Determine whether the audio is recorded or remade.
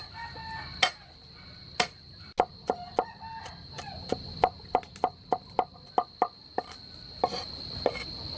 recorded